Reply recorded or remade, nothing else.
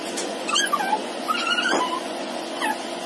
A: remade